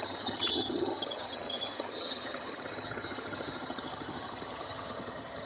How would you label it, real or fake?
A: fake